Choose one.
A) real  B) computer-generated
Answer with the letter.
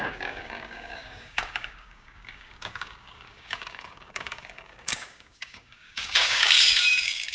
B